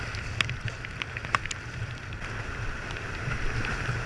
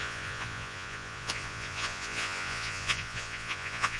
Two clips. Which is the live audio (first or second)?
first